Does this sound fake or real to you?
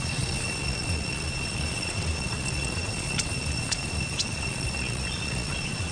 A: fake